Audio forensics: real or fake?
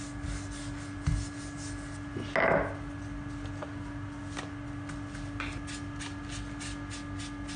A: real